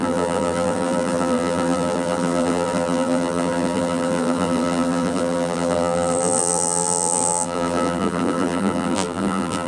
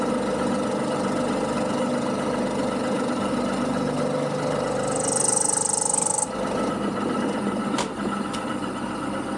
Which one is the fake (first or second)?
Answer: first